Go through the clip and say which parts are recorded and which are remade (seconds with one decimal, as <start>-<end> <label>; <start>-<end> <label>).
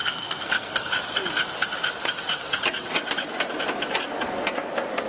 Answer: 0.0-0.9 remade; 0.9-5.1 recorded